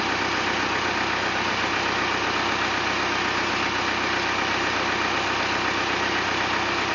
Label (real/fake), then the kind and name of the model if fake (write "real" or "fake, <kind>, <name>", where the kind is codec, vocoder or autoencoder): real